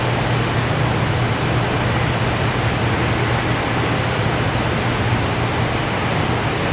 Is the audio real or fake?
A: real